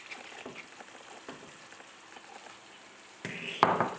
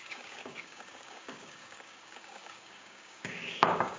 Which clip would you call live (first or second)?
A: first